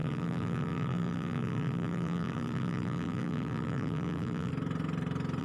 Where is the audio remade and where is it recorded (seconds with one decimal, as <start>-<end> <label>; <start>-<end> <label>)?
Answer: 0.0-4.5 remade; 4.5-5.4 recorded